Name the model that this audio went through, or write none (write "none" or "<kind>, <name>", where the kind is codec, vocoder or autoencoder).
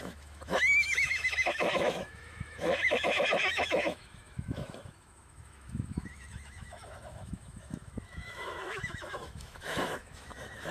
autoencoder, DAC-VAE